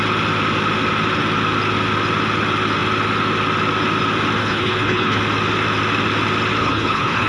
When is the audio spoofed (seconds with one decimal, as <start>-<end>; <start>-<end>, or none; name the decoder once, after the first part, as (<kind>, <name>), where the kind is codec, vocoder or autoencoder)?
4.4-5.2 (codec, HILCodec); 6.6-7.3

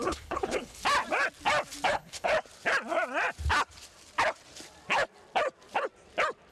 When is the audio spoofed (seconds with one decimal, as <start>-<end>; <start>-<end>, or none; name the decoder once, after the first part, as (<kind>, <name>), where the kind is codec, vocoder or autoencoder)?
0.0-0.8 (codec, HILCodec); 1.9-2.3

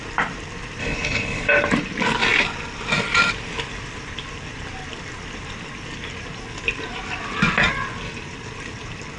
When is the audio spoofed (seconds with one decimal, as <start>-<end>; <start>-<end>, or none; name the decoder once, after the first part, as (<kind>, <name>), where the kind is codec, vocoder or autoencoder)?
0.8-1.5 (codec, HILCodec)

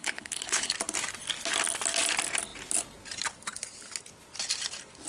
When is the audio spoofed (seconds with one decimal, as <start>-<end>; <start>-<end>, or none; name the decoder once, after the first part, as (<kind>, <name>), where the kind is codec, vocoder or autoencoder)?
0.0-0.7 (codec, HILCodec)

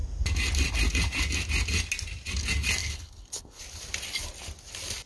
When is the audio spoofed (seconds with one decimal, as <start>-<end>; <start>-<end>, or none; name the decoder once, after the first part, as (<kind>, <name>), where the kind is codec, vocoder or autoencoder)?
2.8-3.6 (codec, HILCodec)

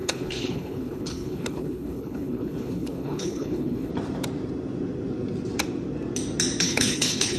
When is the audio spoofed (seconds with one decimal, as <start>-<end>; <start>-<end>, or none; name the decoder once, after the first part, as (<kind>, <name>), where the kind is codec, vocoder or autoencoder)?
0.0-3.9 (codec, HILCodec); 6.6-7.4